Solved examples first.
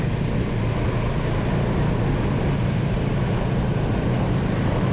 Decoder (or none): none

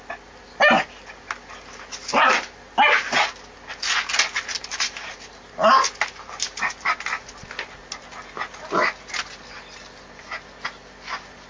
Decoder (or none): none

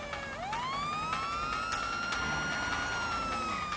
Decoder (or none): none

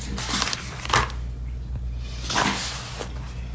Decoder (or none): none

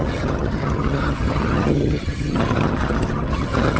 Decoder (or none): vocoder, HiFi-GAN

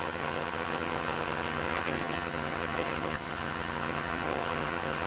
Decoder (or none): vocoder, HiFi-GAN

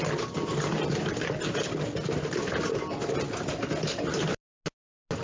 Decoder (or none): none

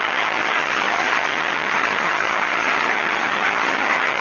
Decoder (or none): vocoder, HiFi-GAN